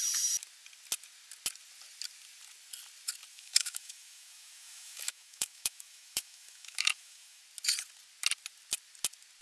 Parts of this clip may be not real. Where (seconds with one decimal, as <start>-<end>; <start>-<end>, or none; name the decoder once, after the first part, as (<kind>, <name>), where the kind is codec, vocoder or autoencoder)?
3.3-7.4 (autoencoder, DAC-VAE)